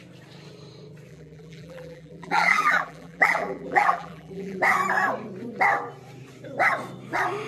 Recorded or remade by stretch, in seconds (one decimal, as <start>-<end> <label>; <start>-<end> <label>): 0.0-1.1 recorded; 1.1-4.6 remade; 4.6-7.5 recorded